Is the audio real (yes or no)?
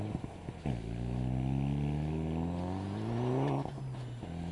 yes